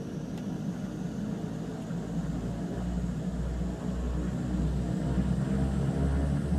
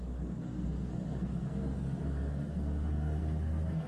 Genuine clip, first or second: first